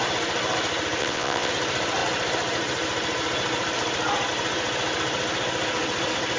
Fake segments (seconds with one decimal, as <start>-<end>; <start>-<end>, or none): 1.0-1.5